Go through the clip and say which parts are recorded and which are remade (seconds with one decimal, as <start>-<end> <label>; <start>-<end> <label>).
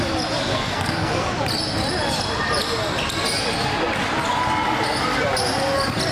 0.0-0.5 recorded; 0.5-1.3 remade; 1.3-6.1 recorded